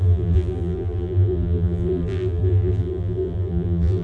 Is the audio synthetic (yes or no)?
yes